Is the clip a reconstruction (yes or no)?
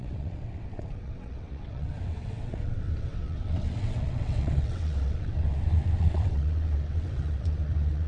yes